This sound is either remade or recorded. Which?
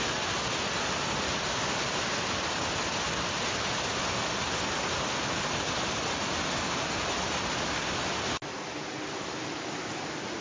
recorded